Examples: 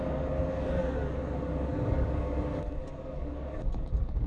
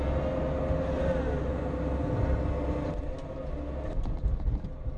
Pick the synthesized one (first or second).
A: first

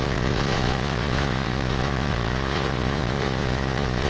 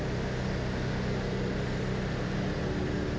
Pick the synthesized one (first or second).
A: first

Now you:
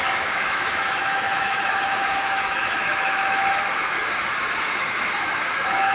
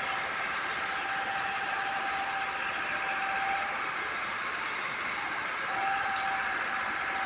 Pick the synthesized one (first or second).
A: first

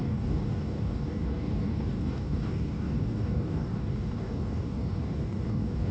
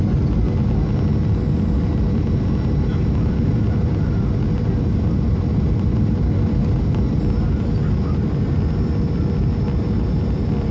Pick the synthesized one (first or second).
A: first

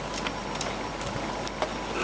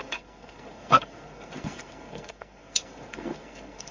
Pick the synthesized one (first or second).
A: second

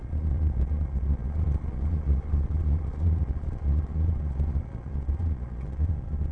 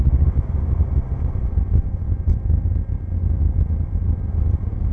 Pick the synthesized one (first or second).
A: first